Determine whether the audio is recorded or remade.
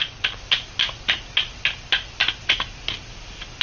recorded